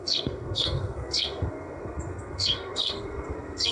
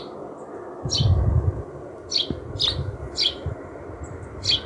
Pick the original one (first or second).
second